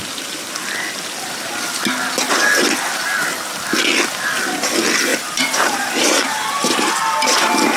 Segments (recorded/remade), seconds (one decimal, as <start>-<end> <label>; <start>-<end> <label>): 0.0-5.1 recorded; 5.1-6.9 remade; 6.9-7.8 recorded